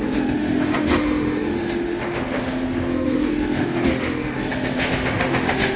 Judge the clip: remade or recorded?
remade